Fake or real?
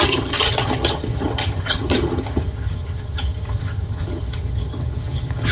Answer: fake